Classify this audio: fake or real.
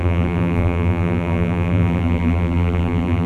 fake